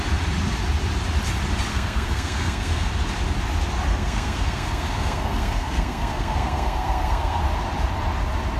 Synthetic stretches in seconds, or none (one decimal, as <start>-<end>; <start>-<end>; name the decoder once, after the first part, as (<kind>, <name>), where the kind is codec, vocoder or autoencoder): 1.7-2.9 (codec, SNAC); 3.9-7.4